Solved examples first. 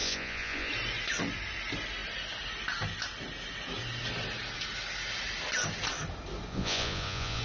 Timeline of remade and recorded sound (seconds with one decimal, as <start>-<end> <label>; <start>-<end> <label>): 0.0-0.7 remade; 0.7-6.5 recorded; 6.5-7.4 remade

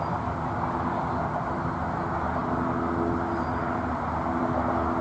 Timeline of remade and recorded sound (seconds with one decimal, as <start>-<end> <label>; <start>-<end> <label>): 0.0-5.0 recorded

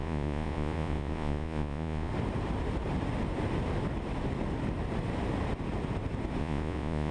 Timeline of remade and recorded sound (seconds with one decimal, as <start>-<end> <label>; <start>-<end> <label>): 0.0-2.1 remade; 2.1-6.4 recorded; 6.4-7.1 remade

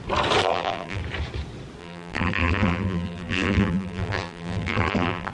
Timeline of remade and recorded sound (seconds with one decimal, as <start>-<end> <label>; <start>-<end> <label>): 0.0-0.4 recorded; 0.4-1.0 remade; 1.0-1.8 recorded; 1.8-5.3 remade

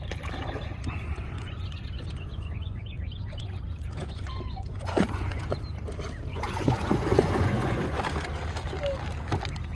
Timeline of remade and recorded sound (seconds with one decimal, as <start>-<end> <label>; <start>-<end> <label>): 0.0-0.7 recorded; 0.7-5.6 remade; 5.6-6.3 recorded; 6.3-8.0 remade; 8.0-9.7 recorded

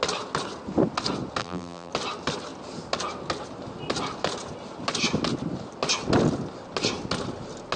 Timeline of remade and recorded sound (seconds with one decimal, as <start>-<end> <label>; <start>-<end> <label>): 0.0-1.4 recorded; 1.4-1.9 remade; 1.9-7.8 recorded

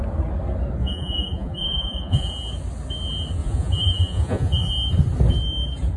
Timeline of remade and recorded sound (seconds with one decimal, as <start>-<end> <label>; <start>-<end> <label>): 0.0-0.8 recorded; 0.8-2.3 remade; 2.3-3.4 recorded; 3.4-4.7 remade; 4.7-6.0 recorded